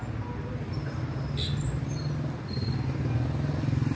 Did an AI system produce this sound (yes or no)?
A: no